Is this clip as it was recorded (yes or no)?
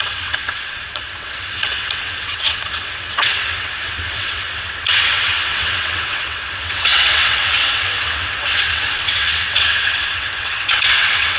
no